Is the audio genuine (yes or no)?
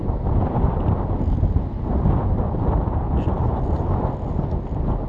yes